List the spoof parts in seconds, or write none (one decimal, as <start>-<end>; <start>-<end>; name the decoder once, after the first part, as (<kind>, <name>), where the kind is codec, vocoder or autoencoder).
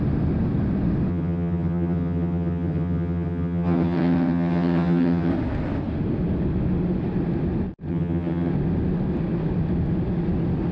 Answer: 1.1-5.3 (vocoder, HiFi-GAN); 7.9-8.5